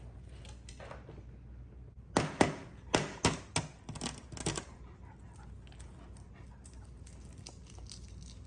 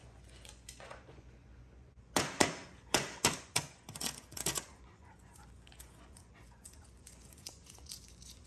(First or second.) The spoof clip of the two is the second